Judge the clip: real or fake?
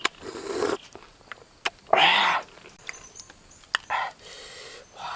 real